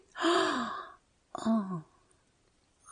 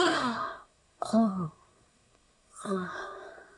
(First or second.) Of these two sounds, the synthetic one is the second